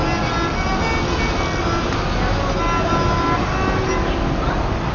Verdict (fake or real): real